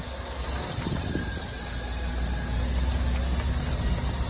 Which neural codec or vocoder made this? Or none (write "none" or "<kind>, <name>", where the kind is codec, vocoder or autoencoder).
none